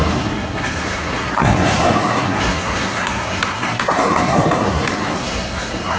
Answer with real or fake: fake